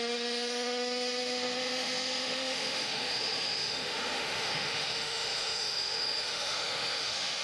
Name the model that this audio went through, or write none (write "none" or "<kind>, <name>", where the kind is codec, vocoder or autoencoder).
autoencoder, DAC-VAE